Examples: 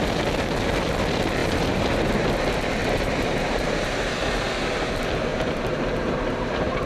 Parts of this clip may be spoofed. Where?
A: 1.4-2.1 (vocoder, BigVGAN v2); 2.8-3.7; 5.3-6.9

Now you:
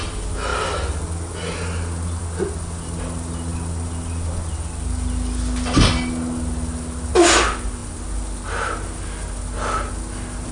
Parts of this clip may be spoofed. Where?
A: none

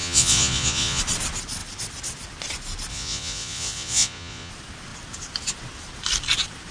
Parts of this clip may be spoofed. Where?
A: 0.0-1.0 (vocoder, Vocos); 2.9-4.5

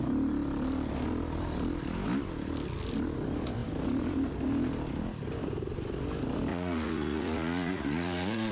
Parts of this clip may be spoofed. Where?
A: 6.5-8.5 (vocoder, Vocos)